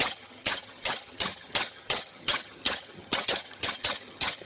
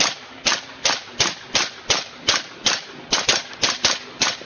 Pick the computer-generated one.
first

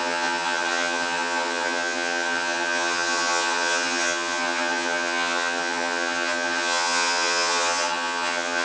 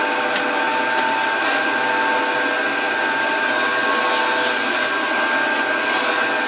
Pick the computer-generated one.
first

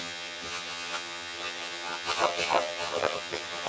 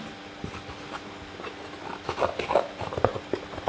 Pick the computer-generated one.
first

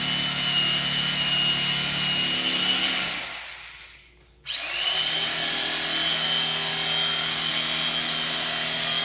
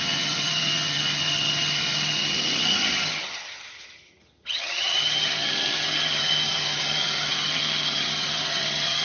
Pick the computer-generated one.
second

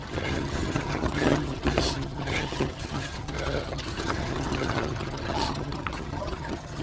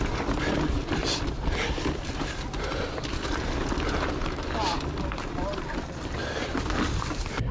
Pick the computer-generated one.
first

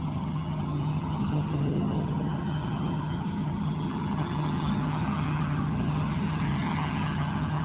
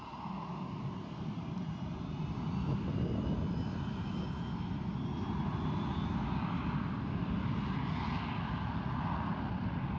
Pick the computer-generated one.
first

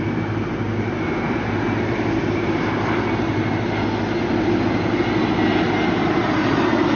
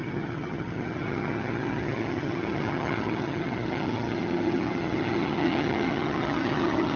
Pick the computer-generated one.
second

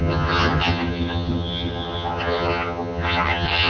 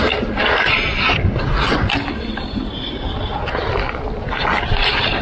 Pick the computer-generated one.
first